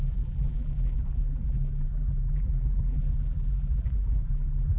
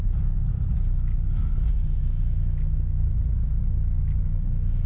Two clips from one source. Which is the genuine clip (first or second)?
second